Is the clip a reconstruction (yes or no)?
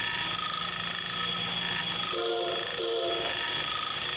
no